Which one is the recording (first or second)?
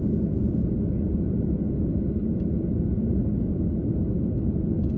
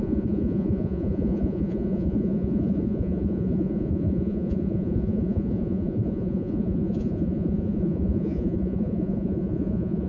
first